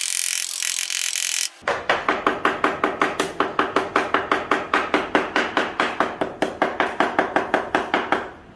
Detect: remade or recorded recorded